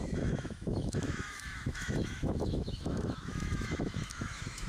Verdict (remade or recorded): remade